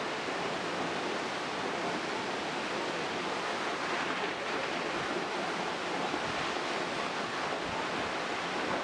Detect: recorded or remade recorded